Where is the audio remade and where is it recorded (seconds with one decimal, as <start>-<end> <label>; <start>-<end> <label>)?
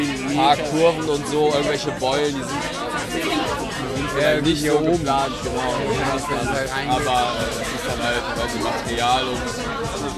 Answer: 0.0-5.5 recorded; 5.5-8.2 remade; 8.2-10.2 recorded